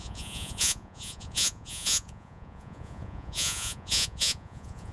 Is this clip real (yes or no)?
no